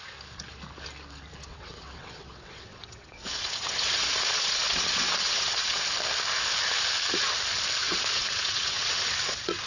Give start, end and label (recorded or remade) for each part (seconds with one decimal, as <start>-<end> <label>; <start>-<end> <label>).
0.0-1.5 recorded; 1.5-5.8 remade; 5.8-7.8 recorded; 7.8-9.7 remade